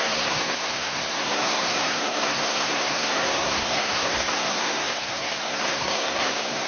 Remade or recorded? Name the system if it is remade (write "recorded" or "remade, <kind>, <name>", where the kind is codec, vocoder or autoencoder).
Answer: remade, codec, SNAC